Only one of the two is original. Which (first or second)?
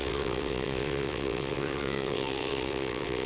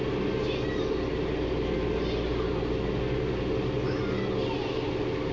second